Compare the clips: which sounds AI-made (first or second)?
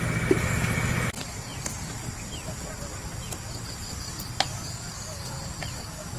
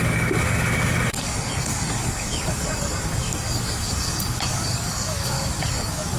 second